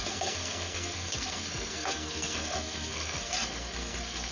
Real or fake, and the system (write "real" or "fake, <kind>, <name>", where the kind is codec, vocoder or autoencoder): fake, codec, SNAC